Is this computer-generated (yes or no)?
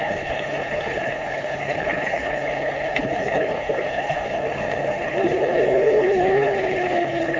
yes